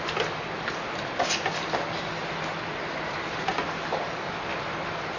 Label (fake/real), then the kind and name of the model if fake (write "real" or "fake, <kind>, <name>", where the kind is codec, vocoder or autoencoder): real